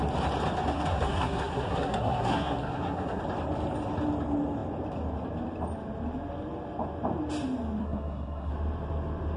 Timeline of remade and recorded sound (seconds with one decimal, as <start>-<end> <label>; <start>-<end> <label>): 0.0-0.7 recorded; 0.7-3.2 remade; 3.2-7.8 recorded; 7.8-8.5 remade; 8.5-9.4 recorded